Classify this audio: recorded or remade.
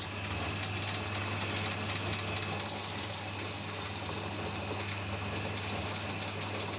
recorded